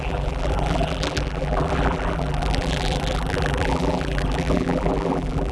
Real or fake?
fake